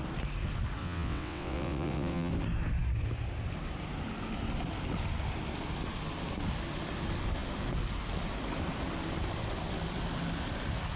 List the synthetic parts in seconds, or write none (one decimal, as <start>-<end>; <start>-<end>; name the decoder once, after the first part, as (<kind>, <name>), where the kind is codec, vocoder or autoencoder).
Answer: 0.8-2.3 (vocoder, WaveNeXt)